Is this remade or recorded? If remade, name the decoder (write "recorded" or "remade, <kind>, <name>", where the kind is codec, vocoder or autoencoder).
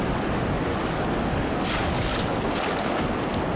recorded